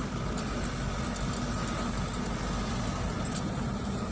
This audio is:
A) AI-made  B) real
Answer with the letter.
B